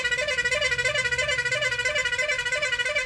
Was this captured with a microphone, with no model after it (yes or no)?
yes